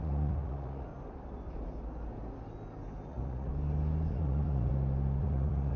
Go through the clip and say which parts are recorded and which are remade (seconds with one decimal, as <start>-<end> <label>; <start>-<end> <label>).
0.0-0.9 remade; 0.9-3.1 recorded; 3.1-3.5 remade; 3.5-4.1 recorded; 4.1-4.7 remade; 4.7-5.2 recorded; 5.2-5.8 remade